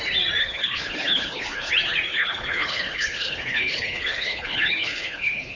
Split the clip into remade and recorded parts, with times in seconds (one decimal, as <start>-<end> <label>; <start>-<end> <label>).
0.0-0.4 recorded; 0.4-1.7 remade; 1.7-2.1 recorded; 2.1-5.6 remade